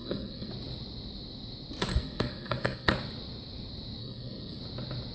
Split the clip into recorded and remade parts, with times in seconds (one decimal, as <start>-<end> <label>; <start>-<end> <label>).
0.0-0.5 remade; 0.5-1.9 recorded; 1.9-2.9 remade; 2.9-4.0 recorded; 4.0-4.6 remade; 4.6-5.1 recorded